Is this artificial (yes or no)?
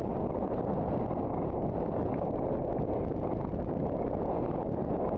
no